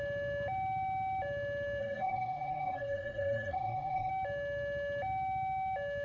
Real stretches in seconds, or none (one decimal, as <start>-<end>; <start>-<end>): 0.0-1.8; 4.1-6.0

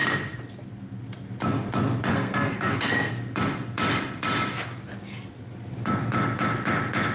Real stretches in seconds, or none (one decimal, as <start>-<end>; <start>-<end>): 0.0-2.1; 3.1-7.1